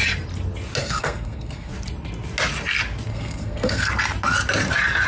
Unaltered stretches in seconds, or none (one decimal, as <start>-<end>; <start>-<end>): 0.0-0.8; 1.7-3.1; 3.9-5.1